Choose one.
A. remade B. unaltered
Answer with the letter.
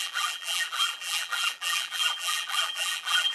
A